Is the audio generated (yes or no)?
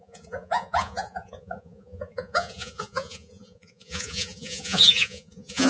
yes